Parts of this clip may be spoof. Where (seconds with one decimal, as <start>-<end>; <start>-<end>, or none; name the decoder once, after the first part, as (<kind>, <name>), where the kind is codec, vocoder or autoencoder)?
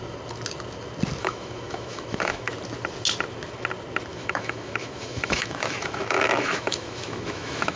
1.2-2.5 (autoencoder, DAC-VAE); 4.1-7.8